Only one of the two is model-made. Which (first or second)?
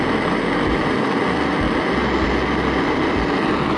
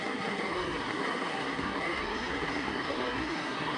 second